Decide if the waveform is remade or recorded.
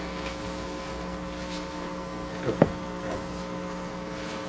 remade